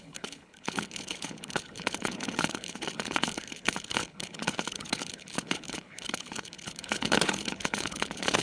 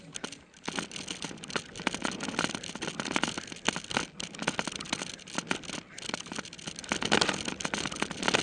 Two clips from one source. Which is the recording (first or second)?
second